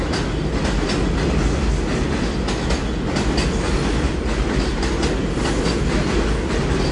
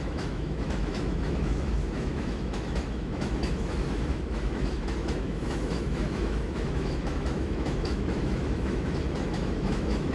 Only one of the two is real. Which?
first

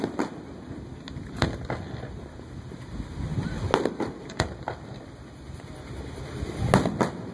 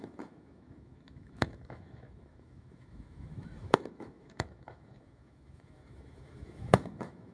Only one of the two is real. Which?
first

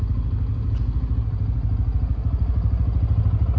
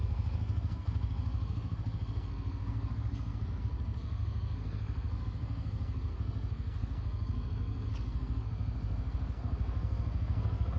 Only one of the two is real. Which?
first